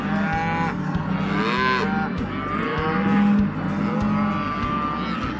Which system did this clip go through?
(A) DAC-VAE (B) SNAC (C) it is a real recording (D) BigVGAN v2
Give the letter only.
C